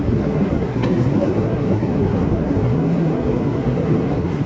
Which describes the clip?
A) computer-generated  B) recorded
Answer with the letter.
A